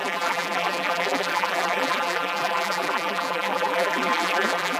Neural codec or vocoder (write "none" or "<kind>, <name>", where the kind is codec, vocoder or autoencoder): vocoder, BigVGAN v2